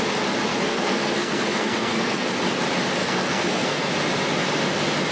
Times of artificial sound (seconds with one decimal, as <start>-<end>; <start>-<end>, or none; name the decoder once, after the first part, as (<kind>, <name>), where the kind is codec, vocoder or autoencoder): 0.5-2.3 (codec, SNAC); 3.0-3.9